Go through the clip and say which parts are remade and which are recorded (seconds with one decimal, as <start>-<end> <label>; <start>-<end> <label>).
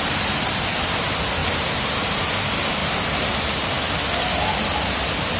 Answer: 0.0-1.4 recorded; 1.4-2.2 remade; 2.2-2.8 recorded; 2.8-3.8 remade; 3.8-5.4 recorded